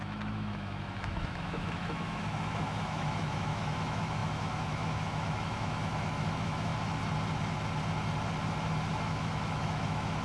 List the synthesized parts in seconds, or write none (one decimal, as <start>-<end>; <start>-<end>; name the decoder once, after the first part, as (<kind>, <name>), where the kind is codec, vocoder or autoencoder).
0.0-6.7 (autoencoder, DAC-VAE); 8.9-10.2